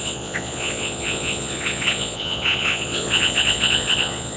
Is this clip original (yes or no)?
no